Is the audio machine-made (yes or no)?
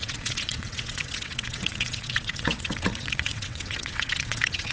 yes